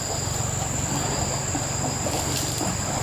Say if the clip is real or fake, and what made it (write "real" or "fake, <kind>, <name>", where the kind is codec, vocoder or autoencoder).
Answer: real